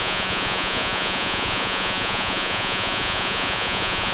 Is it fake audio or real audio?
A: fake